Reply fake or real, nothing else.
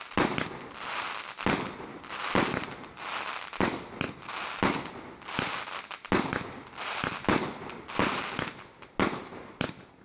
real